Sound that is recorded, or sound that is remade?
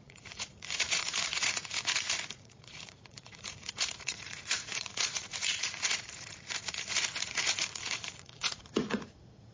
remade